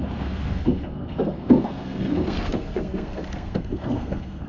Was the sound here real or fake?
fake